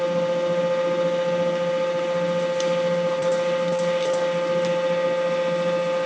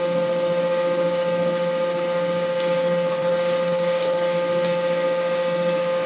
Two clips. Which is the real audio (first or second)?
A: first